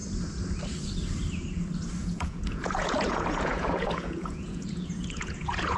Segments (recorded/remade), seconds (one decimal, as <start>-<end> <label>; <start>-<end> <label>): 0.0-2.0 recorded; 2.0-5.8 remade